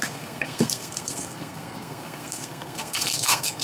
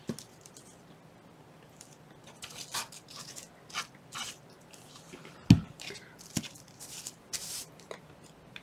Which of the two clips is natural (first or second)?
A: second